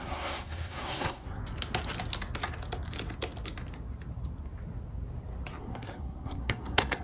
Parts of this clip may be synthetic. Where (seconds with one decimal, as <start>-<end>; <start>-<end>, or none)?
0.0-1.4; 5.6-7.0